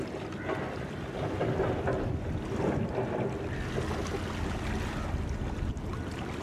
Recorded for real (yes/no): yes